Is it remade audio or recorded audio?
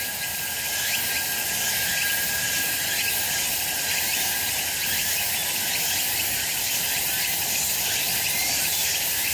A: recorded